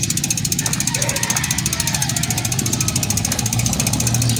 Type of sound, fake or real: real